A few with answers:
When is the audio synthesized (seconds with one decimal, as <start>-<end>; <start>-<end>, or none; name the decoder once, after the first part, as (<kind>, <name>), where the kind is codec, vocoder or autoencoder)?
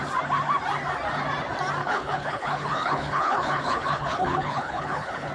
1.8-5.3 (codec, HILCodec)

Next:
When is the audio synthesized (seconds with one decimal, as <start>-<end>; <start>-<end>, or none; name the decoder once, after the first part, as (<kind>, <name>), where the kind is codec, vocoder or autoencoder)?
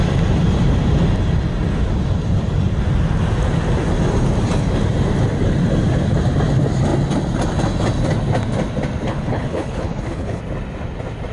9.1-10.4 (codec, HILCodec)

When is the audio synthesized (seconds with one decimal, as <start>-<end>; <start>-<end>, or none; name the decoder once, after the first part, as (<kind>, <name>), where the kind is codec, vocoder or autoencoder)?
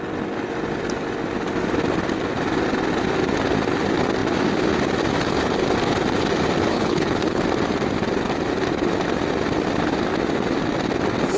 6.7-7.4 (codec, HILCodec)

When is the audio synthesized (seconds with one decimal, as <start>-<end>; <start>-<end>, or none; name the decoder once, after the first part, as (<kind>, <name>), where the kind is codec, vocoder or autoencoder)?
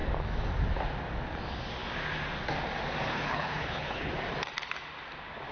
3.1-4.1 (codec, HILCodec)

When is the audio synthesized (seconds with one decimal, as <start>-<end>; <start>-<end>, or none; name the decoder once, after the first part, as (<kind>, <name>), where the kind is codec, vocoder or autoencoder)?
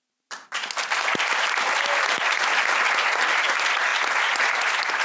none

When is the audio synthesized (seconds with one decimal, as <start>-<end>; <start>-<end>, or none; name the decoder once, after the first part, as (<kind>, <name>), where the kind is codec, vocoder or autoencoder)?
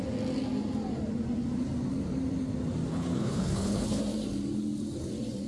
2.9-4.0 (codec, HILCodec)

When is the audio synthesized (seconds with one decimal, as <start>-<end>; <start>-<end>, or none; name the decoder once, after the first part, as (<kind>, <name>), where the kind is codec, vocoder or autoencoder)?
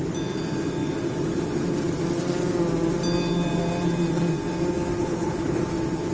5.0-5.6 (codec, HILCodec)